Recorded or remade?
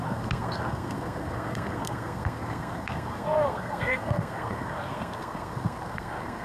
remade